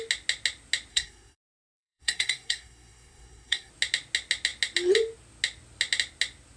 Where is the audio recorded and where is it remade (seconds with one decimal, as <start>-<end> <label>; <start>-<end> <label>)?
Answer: 0.0-0.9 recorded; 0.9-3.7 remade; 3.7-6.6 recorded